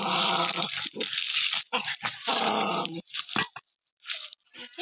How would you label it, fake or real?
real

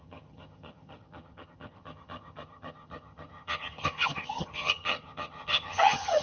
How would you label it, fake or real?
fake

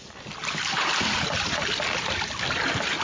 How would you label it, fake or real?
real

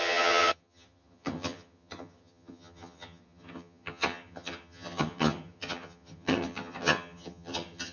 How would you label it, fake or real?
fake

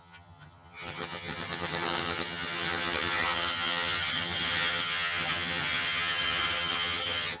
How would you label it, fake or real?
fake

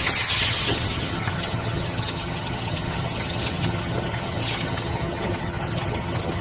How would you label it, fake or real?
fake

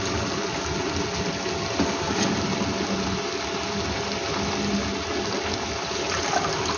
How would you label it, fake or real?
real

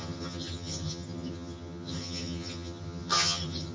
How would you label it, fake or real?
fake